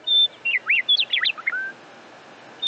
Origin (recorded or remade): recorded